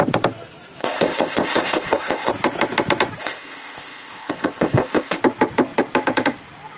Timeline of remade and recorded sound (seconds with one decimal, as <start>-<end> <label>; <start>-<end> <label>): 0.0-0.8 recorded; 0.8-2.3 remade; 2.3-3.2 recorded; 3.2-5.2 remade; 5.2-6.8 recorded